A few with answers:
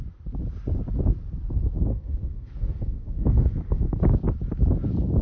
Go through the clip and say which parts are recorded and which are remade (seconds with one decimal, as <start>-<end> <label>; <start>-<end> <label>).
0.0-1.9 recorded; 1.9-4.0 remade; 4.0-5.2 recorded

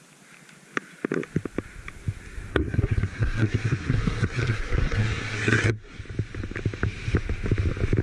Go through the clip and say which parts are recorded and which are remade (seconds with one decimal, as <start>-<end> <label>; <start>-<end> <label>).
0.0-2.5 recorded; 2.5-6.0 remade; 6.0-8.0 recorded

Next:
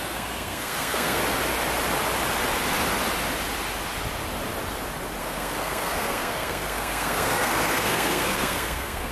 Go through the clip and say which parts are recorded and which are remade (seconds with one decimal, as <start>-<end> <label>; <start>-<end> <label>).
0.0-1.2 remade; 1.2-5.2 recorded; 5.2-9.1 remade